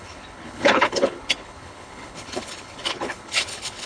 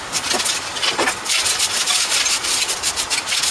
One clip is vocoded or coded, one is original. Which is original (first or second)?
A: second